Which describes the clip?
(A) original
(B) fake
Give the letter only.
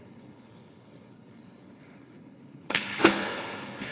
B